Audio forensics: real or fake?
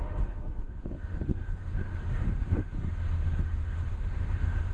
fake